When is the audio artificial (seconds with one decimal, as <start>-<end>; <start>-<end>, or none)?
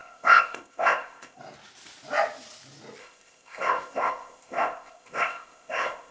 0.0-1.4; 3.0-6.1